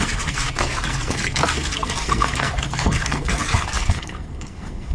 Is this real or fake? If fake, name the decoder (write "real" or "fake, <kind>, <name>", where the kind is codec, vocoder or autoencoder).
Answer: fake, codec, SNAC